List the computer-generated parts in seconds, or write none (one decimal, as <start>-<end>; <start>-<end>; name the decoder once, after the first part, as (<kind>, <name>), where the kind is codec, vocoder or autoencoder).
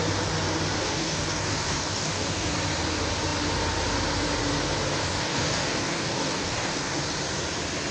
0.8-2.5 (codec, DAC); 5.0-7.0